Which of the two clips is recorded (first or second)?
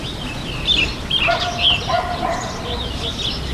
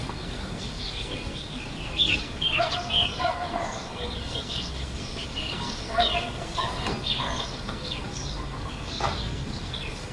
first